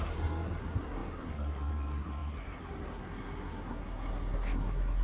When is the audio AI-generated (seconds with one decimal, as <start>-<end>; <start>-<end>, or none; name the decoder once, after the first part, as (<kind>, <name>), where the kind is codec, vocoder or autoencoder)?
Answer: 0.0-5.0 (codec, SNAC)